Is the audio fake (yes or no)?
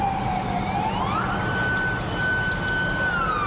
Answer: no